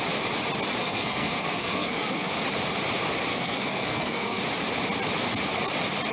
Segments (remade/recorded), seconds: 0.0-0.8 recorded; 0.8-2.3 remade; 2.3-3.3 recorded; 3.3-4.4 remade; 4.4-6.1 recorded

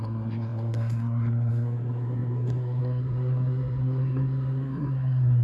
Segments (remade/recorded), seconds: 0.0-5.4 remade

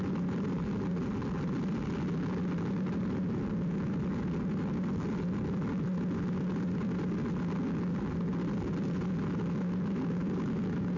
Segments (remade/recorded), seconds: 0.0-11.0 recorded

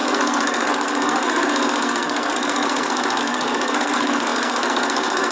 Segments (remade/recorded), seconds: 0.0-5.3 remade